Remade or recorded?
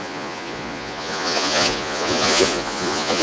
remade